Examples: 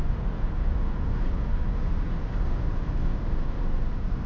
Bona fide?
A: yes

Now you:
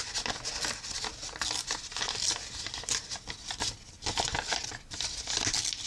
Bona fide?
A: yes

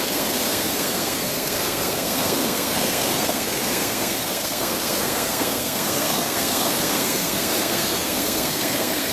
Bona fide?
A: no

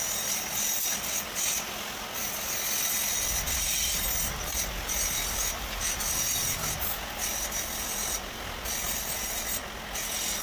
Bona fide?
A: yes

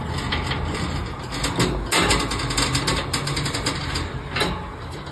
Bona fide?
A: yes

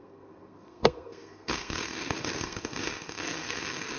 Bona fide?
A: no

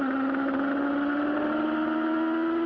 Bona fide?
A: yes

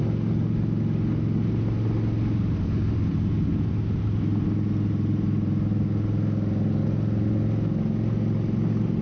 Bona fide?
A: yes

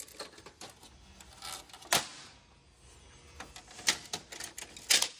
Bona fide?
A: yes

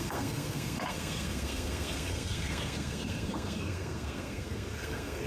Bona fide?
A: no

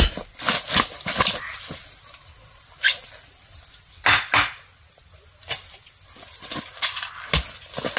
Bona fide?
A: yes